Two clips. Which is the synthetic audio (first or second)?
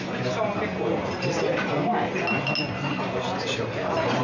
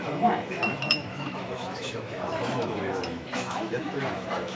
second